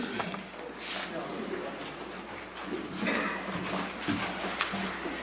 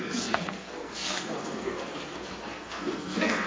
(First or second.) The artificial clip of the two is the second